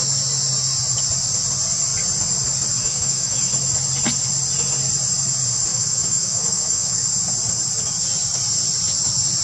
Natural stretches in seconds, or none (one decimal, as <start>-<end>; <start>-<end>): 0.0-2.8; 3.5-5.7; 7.1-9.4